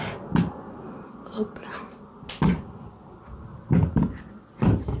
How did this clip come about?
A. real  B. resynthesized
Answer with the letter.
A